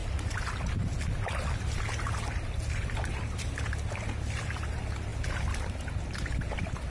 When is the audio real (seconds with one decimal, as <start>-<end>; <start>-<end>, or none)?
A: 0.0-6.9